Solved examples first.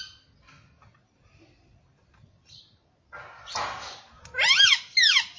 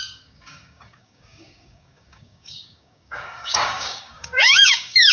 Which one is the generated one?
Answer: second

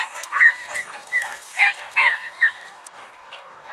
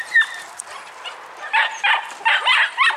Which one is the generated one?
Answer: first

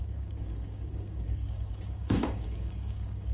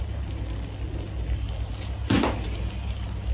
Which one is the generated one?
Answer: first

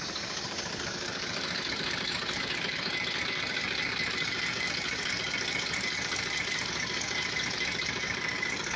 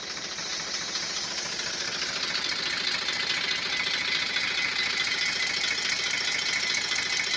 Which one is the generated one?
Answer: first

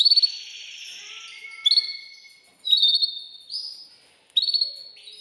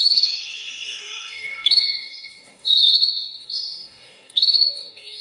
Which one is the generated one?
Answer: second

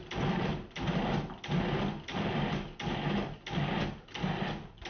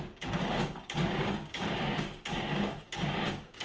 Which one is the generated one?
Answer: second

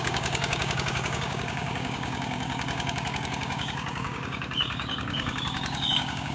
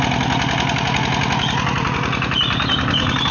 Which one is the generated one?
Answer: first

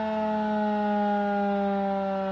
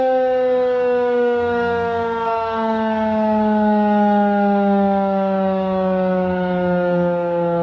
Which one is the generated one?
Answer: second